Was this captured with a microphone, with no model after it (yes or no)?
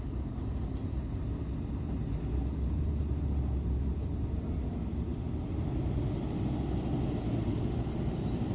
yes